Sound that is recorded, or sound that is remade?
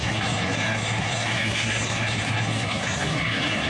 remade